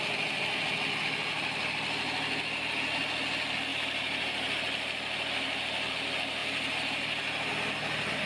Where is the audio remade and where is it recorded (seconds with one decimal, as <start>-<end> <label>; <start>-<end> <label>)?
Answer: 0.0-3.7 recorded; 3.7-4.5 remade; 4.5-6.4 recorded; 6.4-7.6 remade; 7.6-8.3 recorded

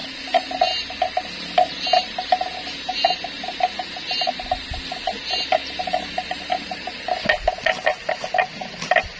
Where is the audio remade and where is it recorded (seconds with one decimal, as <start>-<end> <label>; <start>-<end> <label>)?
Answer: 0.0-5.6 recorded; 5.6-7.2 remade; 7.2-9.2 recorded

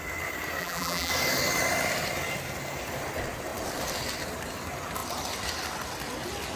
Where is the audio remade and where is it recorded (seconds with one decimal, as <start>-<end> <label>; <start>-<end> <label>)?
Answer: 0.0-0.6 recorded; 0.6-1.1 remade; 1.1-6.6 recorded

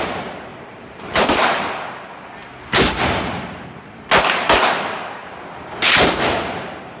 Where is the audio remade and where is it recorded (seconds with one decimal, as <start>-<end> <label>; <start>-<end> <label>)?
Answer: 0.0-0.5 recorded; 0.5-1.7 remade; 1.7-7.0 recorded

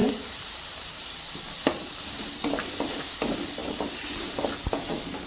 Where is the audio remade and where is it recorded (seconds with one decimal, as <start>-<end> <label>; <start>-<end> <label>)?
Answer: 0.0-3.2 remade; 3.2-3.6 recorded; 3.6-4.4 remade; 4.4-5.3 recorded

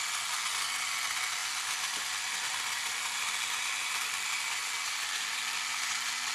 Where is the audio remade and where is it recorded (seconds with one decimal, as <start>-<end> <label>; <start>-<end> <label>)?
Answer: 0.0-1.4 recorded; 1.4-5.2 remade; 5.2-6.3 recorded

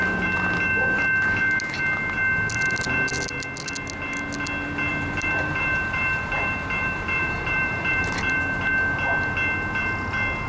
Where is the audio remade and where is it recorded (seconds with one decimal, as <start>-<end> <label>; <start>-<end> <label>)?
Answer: 0.0-4.9 recorded; 4.9-8.7 remade; 8.7-10.5 recorded